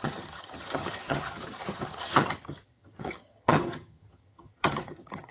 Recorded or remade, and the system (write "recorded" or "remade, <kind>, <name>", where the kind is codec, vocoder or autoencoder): remade, vocoder, HiFi-GAN